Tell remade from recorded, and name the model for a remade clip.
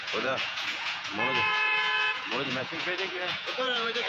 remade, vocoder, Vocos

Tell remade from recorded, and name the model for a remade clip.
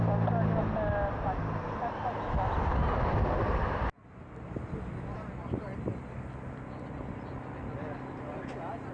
recorded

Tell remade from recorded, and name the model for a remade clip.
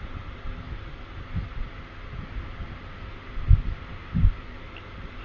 recorded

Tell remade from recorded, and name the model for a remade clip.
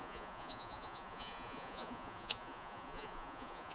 remade, vocoder, Vocos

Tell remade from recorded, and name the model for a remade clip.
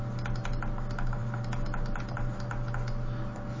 recorded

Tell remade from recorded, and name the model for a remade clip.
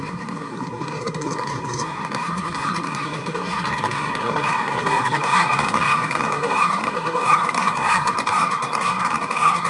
remade, codec, SNAC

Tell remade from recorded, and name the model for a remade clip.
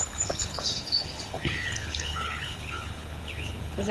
remade, codec, HILCodec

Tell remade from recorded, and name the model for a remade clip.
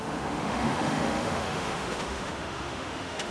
remade, autoencoder, DAC-VAE